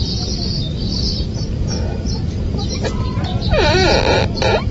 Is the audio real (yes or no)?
yes